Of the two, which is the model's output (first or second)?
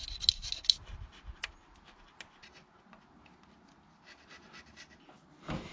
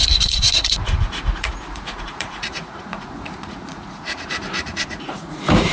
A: second